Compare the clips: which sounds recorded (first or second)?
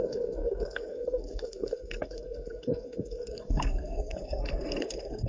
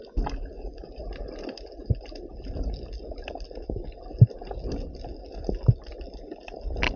second